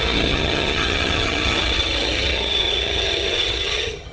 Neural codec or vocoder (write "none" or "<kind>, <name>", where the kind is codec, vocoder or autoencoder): vocoder, HiFi-GAN